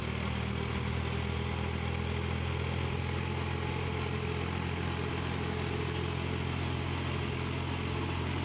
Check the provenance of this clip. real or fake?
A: real